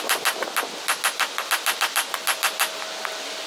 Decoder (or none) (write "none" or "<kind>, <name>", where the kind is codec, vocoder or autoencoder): none